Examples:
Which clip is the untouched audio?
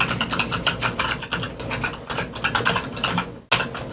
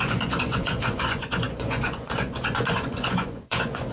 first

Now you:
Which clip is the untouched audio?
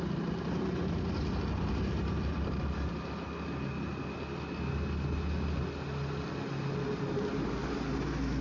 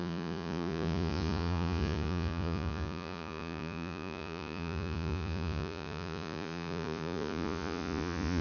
first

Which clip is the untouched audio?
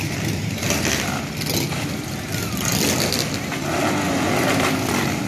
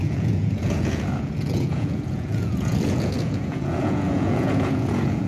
first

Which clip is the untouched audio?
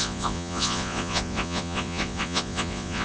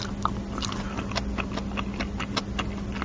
second